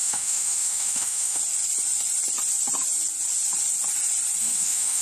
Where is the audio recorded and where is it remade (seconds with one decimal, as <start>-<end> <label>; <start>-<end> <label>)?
0.0-1.4 remade; 1.4-4.4 recorded; 4.4-5.0 remade